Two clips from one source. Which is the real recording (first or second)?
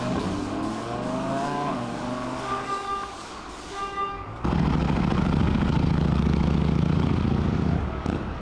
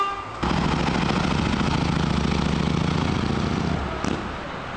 second